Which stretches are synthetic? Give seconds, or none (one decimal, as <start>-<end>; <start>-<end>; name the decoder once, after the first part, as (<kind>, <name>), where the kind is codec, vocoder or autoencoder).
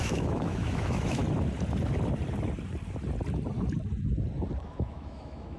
0.0-1.2 (autoencoder, DAC-VAE); 4.6-5.6